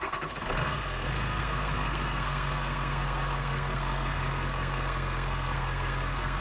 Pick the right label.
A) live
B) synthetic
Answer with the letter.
B